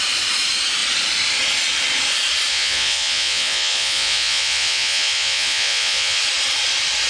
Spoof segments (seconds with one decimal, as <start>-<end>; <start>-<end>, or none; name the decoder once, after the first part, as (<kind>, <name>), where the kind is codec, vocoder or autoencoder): 2.5-6.2 (vocoder, Vocos)